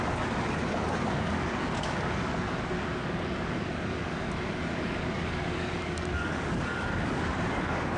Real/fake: fake